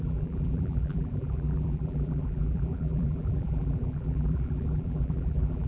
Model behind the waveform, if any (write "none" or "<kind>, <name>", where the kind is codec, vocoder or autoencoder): vocoder, BigVGAN v2